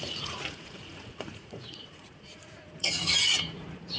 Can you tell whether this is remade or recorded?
remade